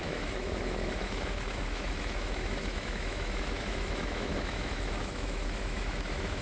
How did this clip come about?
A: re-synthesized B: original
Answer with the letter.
A